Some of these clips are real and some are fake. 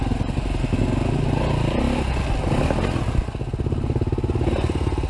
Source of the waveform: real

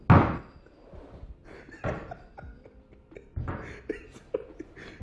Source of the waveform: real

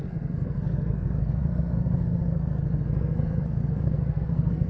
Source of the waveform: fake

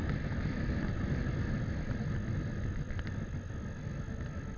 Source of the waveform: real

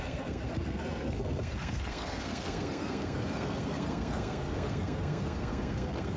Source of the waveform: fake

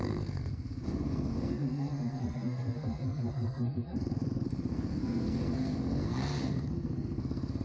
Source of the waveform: fake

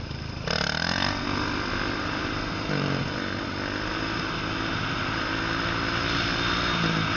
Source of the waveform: real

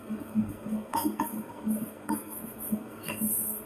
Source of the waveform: fake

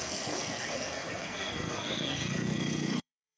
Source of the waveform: fake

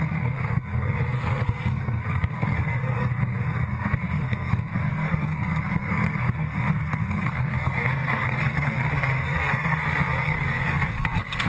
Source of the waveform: fake